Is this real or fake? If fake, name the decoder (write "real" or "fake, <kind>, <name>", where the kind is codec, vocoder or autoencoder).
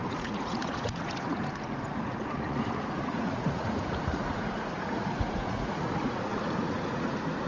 fake, vocoder, Vocos